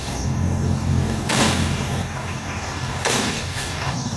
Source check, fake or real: fake